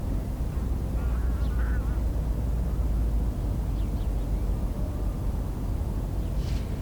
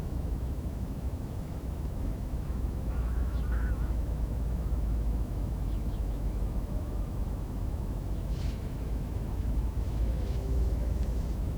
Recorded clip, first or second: first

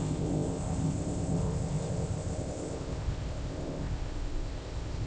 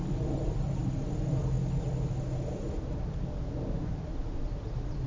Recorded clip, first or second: second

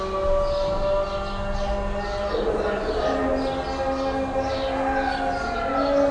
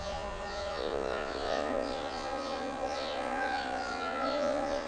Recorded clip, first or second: first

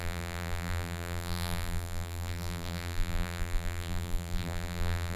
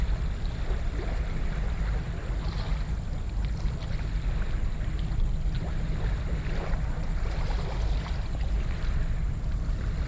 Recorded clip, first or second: second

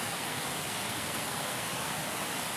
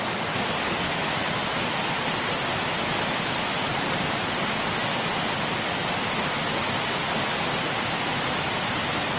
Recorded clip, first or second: second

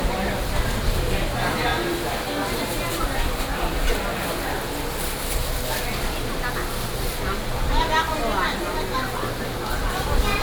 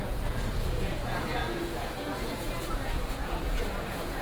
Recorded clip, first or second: first